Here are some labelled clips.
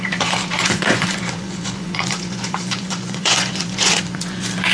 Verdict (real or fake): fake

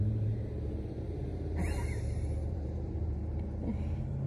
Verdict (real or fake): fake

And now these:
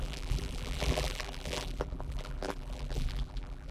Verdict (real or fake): fake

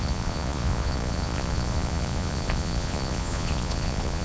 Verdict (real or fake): fake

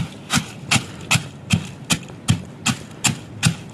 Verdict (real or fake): real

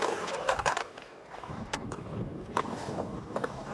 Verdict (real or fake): fake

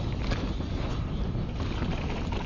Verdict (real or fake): real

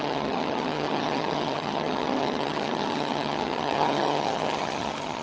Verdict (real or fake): fake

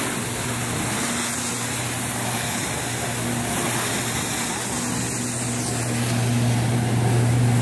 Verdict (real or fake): real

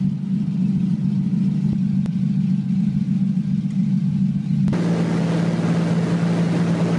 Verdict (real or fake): real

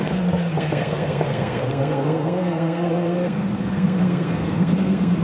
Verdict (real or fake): fake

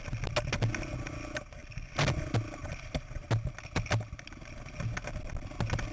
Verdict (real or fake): real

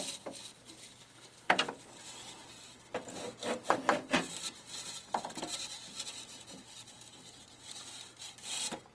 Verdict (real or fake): real